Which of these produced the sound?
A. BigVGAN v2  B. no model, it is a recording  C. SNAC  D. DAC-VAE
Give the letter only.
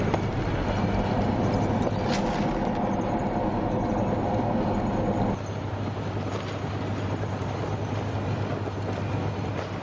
B